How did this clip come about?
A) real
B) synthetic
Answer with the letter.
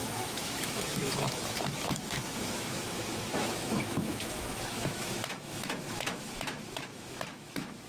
B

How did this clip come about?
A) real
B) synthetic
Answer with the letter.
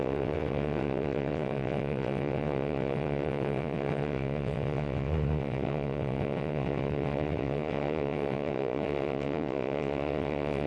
B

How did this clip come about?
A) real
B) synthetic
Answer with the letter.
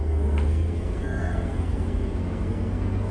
B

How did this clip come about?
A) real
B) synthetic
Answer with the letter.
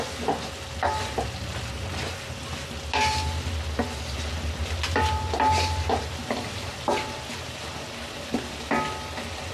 A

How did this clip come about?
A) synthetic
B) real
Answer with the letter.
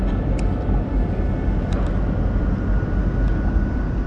B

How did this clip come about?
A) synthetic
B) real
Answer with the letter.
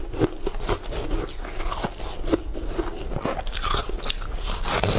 B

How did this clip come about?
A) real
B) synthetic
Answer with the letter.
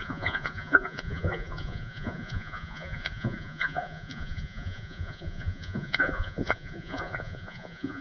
B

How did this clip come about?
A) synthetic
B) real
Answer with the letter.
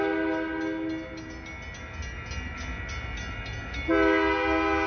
B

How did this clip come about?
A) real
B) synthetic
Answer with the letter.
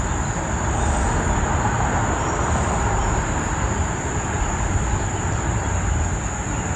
A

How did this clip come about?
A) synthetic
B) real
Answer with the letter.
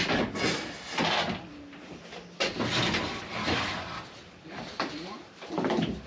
B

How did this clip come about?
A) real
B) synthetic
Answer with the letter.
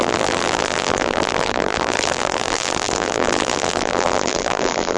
B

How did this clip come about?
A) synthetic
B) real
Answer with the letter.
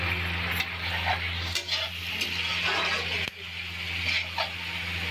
B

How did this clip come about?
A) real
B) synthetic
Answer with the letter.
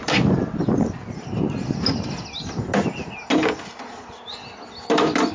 A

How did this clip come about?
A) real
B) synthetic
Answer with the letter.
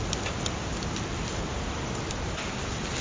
A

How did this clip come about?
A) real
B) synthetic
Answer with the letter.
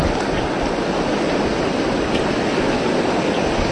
A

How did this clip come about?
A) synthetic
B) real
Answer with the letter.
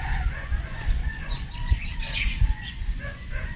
A